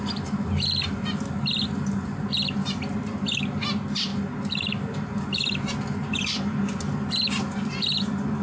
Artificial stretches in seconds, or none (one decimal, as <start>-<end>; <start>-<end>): none